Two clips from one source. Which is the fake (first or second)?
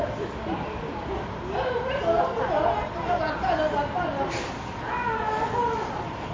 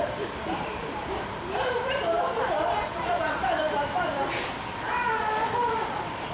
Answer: second